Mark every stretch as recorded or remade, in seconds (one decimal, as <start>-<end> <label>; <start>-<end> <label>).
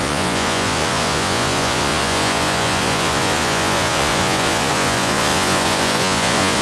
0.0-6.6 remade